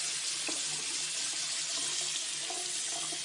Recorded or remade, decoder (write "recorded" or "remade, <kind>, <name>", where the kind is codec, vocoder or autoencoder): recorded